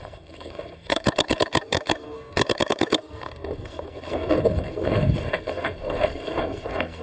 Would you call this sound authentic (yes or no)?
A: no